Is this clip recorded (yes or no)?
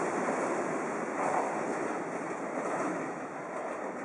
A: yes